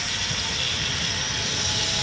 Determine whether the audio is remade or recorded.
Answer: recorded